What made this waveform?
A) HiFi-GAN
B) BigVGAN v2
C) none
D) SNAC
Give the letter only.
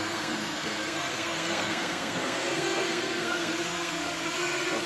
D